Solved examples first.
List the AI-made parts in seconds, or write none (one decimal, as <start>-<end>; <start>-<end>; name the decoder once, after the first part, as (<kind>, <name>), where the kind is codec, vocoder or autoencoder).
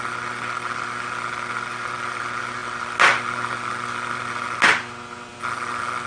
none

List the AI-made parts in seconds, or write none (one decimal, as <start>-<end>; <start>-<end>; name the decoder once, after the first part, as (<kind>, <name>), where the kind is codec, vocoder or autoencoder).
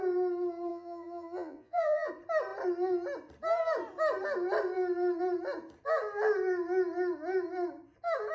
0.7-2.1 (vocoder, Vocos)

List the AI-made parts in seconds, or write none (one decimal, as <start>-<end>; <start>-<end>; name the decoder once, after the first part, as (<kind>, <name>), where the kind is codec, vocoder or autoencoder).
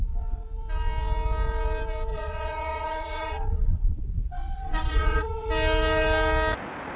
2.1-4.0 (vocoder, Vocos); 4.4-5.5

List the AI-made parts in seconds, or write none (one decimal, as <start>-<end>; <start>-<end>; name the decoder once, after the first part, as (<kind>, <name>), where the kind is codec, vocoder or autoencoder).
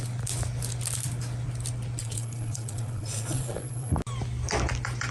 2.0-4.0 (vocoder, Vocos)